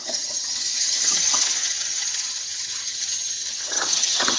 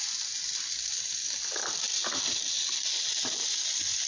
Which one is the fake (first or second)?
first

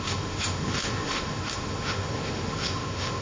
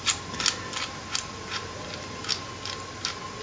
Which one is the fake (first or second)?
first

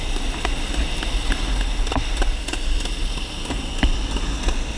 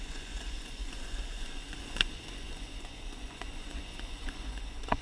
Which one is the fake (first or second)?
second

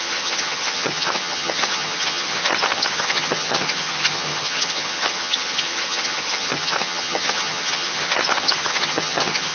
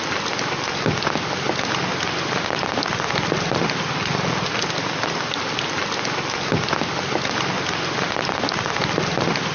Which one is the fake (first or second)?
first